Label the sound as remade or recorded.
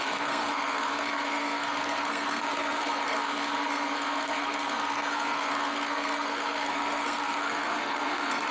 remade